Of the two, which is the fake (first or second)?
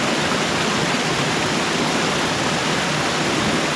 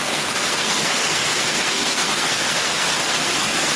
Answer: second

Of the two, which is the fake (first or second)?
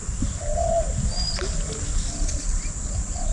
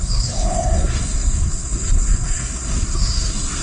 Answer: second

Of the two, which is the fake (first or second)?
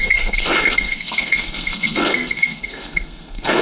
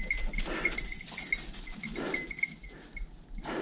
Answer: first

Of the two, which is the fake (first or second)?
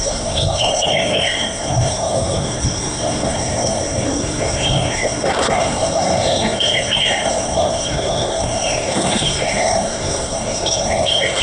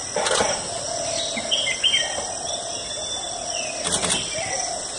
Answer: first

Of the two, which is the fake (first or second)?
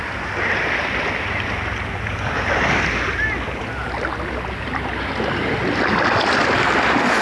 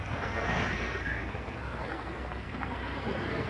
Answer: second